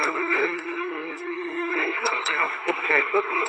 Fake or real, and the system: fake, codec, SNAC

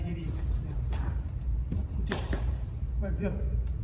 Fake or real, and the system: fake, vocoder, BigVGAN v2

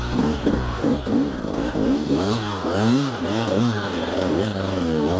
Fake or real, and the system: fake, codec, DAC